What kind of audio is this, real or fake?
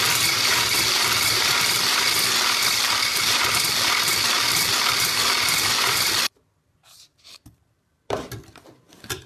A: fake